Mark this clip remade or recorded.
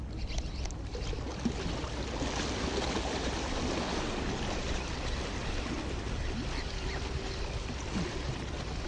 recorded